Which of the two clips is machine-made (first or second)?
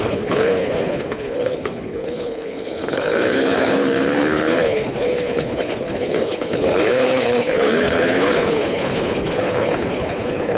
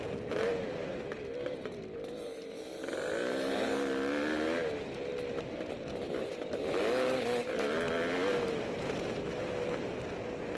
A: first